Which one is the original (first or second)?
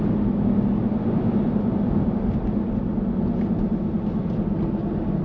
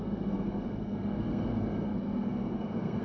first